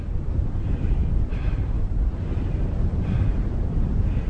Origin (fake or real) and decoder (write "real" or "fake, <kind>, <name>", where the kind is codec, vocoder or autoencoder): fake, vocoder, BigVGAN v2